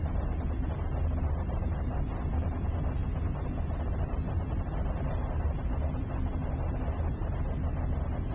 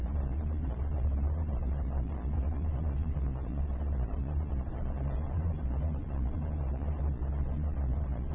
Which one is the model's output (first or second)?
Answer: second